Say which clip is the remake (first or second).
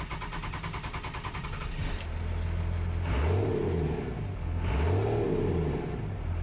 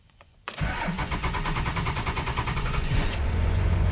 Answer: second